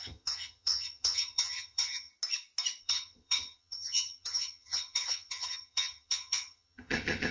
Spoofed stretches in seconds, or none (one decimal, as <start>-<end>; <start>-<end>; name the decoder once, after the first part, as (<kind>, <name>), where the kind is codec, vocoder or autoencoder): 0.0-2.1 (vocoder, HiFi-GAN); 2.8-7.3